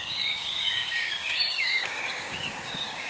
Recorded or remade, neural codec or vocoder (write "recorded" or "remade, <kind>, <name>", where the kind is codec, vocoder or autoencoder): remade, codec, DAC